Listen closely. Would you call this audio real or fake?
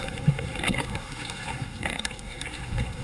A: fake